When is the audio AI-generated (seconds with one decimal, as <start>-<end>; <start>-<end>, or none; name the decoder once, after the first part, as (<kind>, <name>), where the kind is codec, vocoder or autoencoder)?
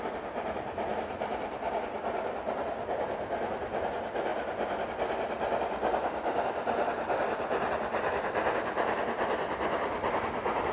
none